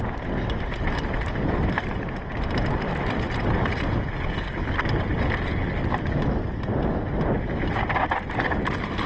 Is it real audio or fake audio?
real